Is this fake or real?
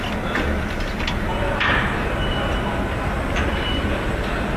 real